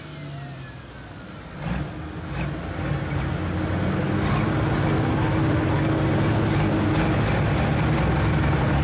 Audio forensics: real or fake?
real